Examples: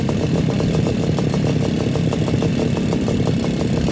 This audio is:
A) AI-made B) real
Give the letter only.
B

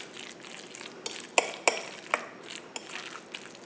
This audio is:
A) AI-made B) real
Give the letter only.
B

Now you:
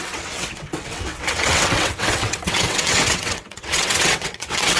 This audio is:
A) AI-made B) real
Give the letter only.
A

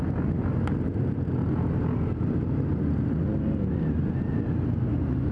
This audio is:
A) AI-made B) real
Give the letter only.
B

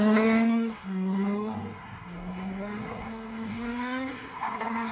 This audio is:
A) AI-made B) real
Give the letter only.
A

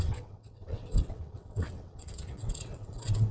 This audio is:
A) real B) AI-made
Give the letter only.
B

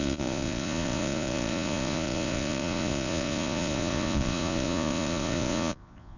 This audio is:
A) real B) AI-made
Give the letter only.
B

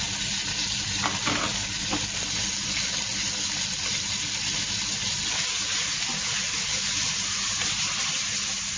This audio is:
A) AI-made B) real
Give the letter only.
B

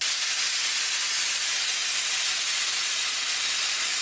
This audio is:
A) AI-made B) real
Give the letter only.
B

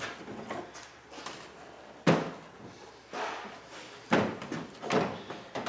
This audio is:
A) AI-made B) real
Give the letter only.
B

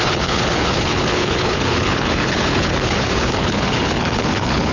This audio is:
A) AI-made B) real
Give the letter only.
A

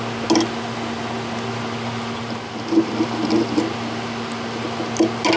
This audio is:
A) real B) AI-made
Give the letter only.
A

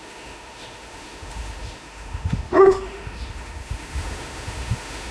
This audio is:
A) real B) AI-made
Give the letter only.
B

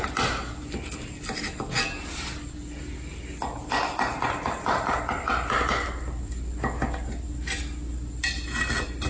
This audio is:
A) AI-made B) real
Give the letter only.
B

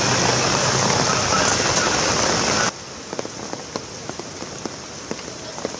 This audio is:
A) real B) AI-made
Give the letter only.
A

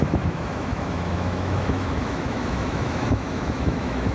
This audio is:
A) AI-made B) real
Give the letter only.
A